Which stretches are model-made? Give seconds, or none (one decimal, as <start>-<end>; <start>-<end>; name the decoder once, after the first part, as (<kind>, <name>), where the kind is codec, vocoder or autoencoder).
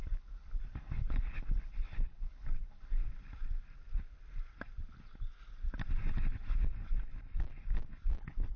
0.0-3.0 (codec, HILCodec); 8.2-8.6